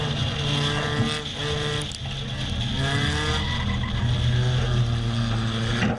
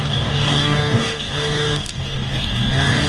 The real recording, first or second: first